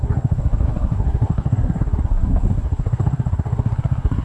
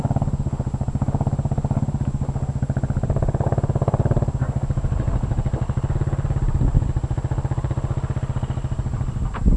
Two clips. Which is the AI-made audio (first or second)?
first